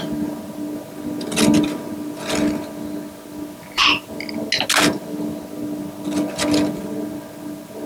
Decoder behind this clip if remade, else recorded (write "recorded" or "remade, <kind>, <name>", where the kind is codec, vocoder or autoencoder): recorded